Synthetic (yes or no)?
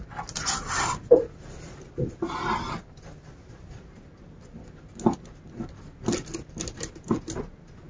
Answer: no